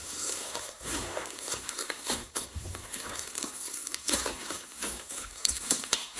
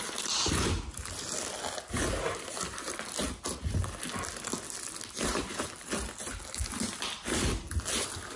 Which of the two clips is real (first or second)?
second